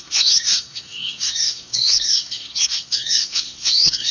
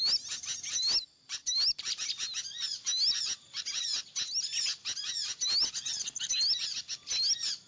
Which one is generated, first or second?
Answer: first